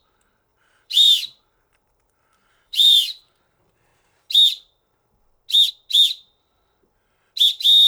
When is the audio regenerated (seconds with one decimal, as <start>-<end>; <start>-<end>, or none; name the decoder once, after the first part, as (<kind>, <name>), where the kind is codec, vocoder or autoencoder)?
0.5-3.3 (vocoder, BigVGAN v2)